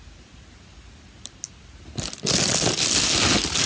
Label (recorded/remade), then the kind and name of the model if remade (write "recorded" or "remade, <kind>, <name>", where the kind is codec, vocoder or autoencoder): recorded